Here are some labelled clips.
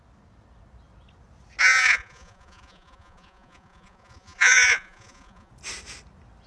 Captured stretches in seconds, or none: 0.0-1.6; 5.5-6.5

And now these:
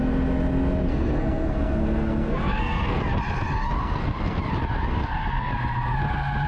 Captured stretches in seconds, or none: 0.0-0.9; 3.0-3.8; 4.4-4.9; 5.5-6.5

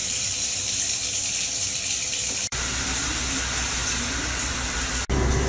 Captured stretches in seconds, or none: 2.8-3.8; 4.5-5.5